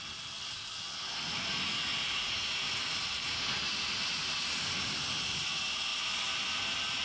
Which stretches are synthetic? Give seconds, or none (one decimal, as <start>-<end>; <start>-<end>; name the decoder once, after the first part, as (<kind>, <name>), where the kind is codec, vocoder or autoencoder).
none